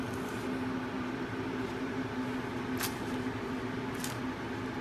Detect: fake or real real